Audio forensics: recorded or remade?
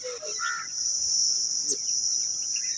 recorded